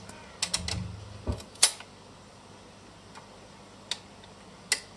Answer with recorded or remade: recorded